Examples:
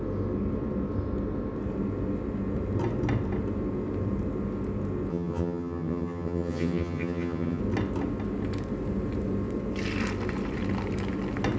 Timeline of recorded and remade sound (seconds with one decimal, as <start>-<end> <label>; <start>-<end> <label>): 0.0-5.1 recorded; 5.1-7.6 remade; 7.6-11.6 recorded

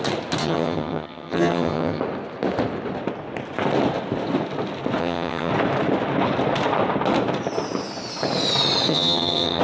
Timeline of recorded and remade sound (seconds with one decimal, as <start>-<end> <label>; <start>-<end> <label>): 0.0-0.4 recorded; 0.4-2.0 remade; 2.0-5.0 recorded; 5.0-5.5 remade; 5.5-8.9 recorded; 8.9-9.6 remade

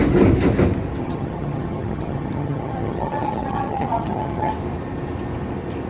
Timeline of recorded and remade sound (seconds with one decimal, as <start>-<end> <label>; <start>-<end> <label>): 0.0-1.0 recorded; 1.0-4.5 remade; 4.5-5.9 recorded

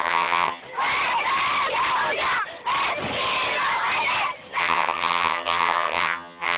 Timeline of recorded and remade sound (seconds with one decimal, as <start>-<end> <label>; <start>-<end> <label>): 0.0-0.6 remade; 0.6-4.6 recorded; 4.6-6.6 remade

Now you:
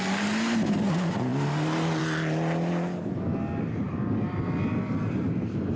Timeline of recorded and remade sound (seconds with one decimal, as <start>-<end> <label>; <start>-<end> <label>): 0.0-5.8 recorded